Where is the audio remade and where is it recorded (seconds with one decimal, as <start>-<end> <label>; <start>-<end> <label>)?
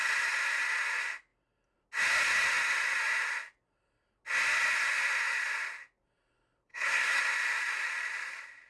0.0-6.7 recorded; 6.7-7.2 remade; 7.2-8.7 recorded